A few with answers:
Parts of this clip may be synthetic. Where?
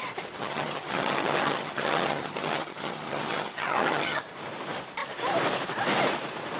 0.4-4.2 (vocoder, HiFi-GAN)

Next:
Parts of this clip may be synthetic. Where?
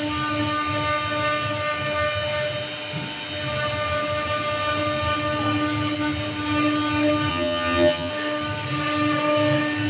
7.3-8.1 (vocoder, HiFi-GAN)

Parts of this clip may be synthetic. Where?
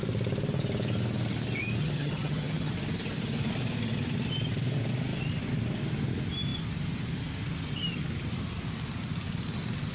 1.8-2.7 (vocoder, HiFi-GAN)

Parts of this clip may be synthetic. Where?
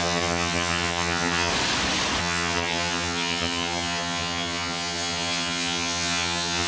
0.0-1.5 (vocoder, HiFi-GAN); 2.2-6.7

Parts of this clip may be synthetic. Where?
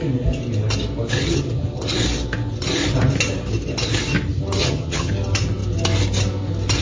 4.6-5.1 (vocoder, HiFi-GAN)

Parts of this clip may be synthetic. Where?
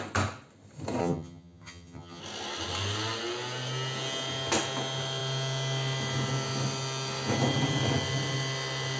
1.0-2.2 (vocoder, HiFi-GAN)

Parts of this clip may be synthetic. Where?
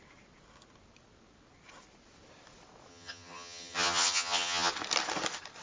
2.9-4.7 (vocoder, HiFi-GAN)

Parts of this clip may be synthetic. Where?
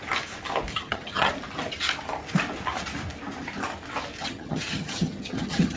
0.7-1.3 (vocoder, HiFi-GAN); 4.2-5.8